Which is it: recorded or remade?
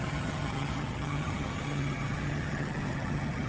remade